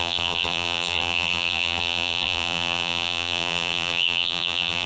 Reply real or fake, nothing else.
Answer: fake